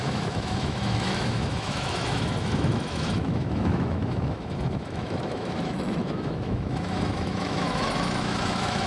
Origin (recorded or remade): remade